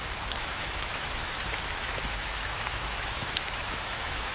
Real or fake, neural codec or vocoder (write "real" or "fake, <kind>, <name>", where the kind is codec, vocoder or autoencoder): fake, autoencoder, DAC-VAE